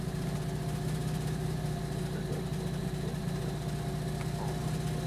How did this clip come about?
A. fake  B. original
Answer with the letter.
B